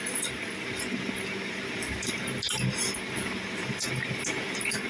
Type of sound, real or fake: real